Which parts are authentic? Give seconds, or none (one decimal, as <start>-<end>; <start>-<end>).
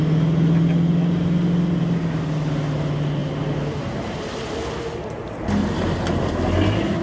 0.0-7.0